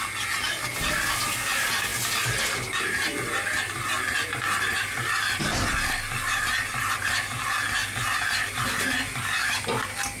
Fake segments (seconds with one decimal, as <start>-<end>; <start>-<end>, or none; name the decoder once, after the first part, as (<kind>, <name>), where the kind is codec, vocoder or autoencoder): none